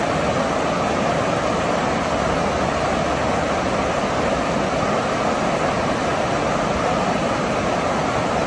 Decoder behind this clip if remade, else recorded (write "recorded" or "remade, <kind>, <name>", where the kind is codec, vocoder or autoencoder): recorded